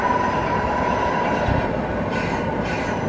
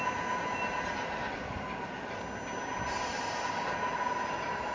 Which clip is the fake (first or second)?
first